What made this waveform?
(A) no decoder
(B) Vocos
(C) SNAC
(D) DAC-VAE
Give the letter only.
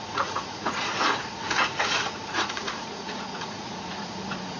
B